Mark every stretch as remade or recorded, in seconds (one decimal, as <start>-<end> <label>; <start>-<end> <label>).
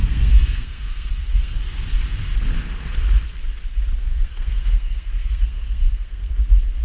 0.0-1.5 remade; 1.5-4.0 recorded; 4.0-6.3 remade; 6.3-6.8 recorded